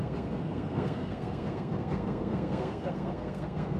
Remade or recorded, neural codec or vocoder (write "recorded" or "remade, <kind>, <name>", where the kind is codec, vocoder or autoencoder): remade, codec, SNAC